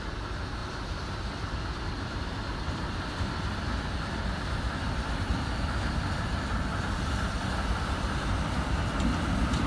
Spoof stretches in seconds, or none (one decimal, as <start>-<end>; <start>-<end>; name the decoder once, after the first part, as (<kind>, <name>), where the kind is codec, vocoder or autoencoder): 0.0-9.7 (vocoder, BigVGAN v2)